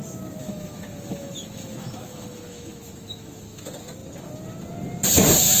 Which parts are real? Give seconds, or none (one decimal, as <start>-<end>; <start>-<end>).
0.0-0.4; 3.6-5.6